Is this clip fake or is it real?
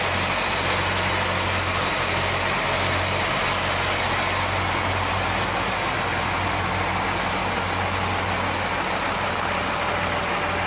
real